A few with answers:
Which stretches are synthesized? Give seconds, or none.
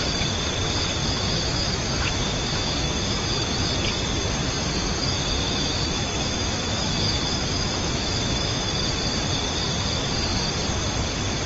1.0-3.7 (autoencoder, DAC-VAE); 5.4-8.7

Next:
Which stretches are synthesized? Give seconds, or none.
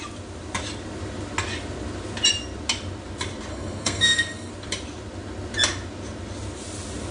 3.5-4.5 (codec, SNAC)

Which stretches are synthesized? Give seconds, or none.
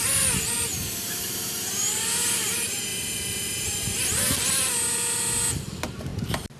0.7-2.0 (vocoder, BigVGAN v2); 2.9-4.6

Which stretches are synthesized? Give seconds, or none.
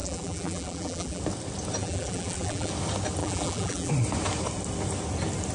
0.0-1.2 (vocoder, BigVGAN v2); 1.8-2.7; 3.2-3.9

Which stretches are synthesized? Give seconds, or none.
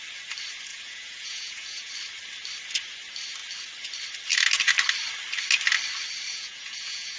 0.7-1.9 (vocoder, Vocos); 6.3-7.2